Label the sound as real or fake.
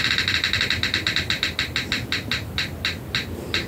real